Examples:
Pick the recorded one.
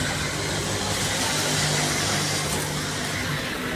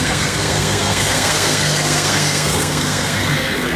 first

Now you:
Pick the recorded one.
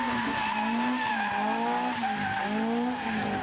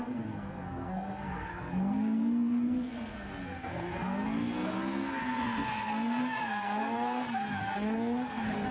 first